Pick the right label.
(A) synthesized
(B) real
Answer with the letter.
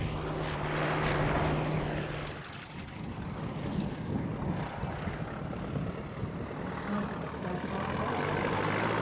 B